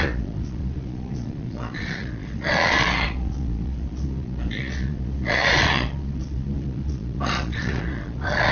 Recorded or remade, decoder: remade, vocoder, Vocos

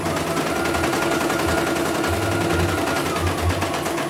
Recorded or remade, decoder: recorded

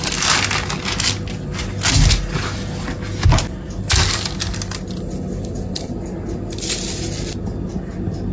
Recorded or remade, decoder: recorded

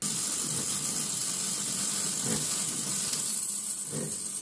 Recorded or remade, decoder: recorded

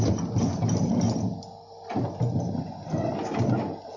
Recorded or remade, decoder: recorded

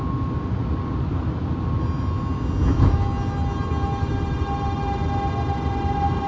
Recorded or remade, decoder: recorded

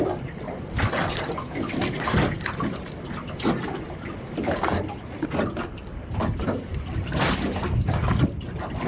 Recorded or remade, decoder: recorded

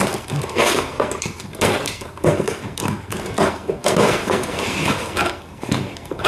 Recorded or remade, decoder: remade, codec, SNAC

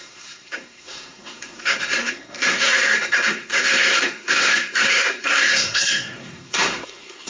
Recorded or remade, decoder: remade, codec, SNAC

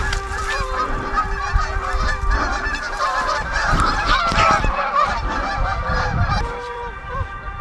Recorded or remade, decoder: remade, vocoder, BigVGAN v2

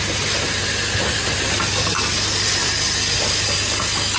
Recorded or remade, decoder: recorded